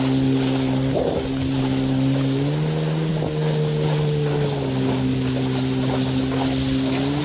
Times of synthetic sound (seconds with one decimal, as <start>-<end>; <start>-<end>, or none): none